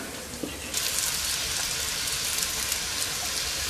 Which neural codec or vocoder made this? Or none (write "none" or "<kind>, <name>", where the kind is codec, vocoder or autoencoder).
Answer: none